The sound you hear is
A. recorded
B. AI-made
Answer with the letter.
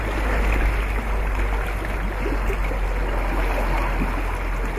A